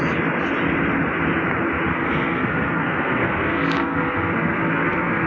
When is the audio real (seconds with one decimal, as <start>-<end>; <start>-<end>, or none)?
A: 0.0-1.9